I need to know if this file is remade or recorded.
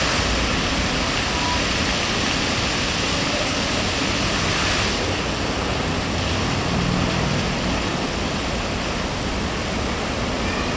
recorded